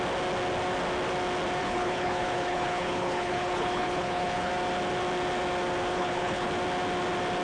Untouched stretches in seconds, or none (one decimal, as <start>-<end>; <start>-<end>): 0.0-1.6; 4.5-5.9; 6.5-7.4